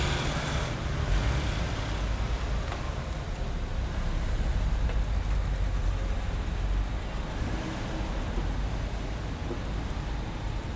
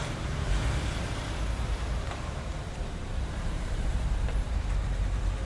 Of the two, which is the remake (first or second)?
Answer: second